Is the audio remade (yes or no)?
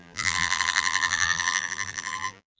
yes